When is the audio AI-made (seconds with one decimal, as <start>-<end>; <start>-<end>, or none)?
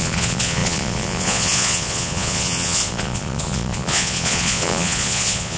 0.0-5.6